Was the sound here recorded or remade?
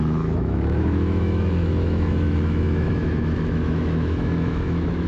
remade